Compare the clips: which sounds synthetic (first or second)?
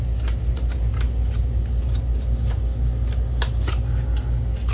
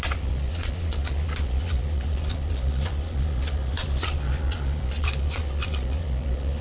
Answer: second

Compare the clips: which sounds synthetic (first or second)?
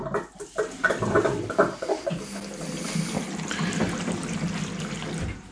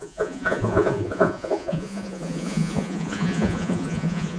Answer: second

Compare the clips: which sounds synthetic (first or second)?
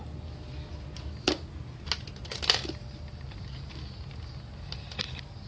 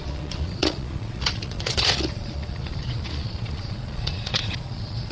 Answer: second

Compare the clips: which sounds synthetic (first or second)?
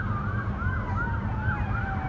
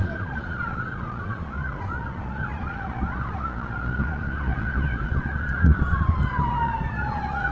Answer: second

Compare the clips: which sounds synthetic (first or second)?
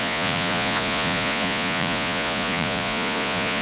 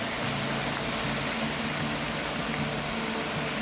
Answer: first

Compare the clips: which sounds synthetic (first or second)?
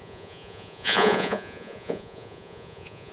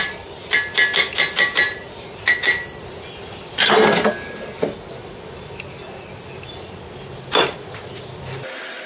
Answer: first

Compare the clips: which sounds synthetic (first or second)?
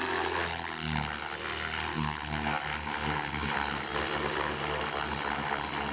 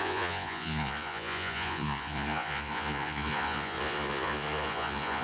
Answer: second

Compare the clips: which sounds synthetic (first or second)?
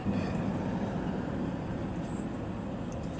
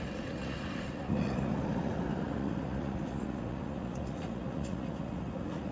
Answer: second